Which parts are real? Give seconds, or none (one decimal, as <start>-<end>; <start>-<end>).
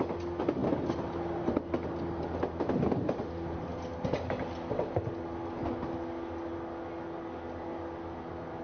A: 0.0-8.6